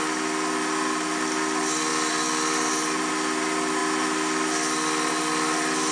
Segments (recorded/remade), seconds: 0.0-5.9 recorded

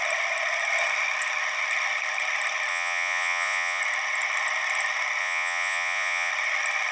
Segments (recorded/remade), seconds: 0.0-2.7 recorded; 2.7-3.8 remade; 3.8-5.2 recorded; 5.2-6.3 remade; 6.3-6.9 recorded

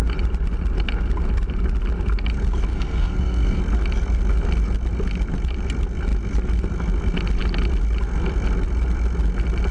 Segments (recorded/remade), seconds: 0.0-2.7 recorded; 2.7-3.6 remade; 3.6-9.7 recorded